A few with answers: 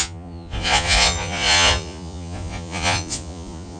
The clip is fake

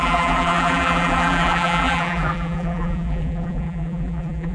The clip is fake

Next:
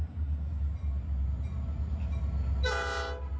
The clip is real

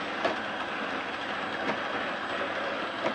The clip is real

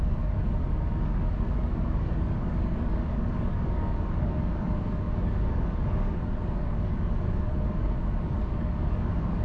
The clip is fake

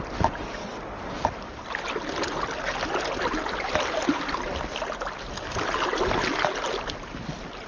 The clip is real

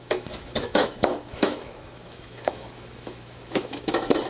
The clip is fake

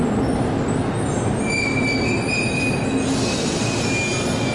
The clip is real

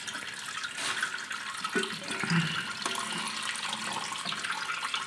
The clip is real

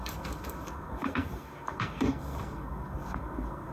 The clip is fake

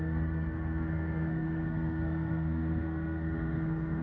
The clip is fake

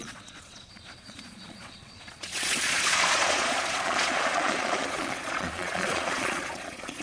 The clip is fake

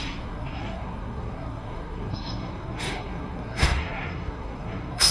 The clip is fake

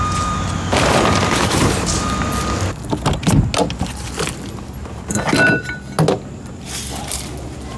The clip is real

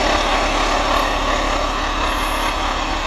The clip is real